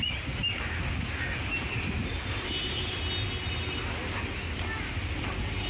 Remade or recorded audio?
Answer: recorded